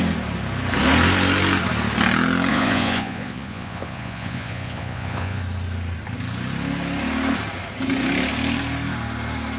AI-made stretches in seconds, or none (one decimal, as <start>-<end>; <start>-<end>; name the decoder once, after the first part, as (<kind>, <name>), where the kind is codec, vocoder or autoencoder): 2.5-5.4 (vocoder, Vocos)